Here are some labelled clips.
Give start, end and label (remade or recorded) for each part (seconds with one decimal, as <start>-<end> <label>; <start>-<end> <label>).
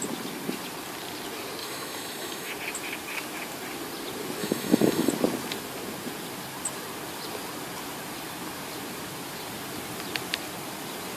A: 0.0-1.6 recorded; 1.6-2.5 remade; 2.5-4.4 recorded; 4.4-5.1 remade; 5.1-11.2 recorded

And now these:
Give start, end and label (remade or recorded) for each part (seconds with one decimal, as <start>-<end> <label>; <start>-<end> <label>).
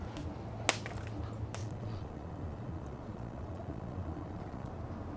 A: 0.0-1.6 recorded; 1.6-4.7 remade; 4.7-5.2 recorded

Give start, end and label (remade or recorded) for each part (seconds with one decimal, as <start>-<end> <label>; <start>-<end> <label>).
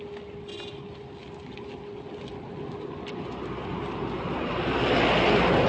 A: 0.0-5.7 recorded